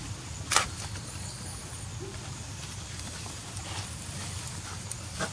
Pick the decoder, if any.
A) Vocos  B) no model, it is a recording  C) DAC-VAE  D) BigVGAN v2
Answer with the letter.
B